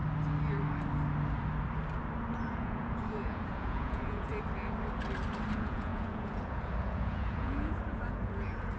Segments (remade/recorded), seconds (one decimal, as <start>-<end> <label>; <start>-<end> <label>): 0.0-2.5 recorded; 2.5-4.3 remade; 4.3-5.5 recorded; 5.5-8.8 remade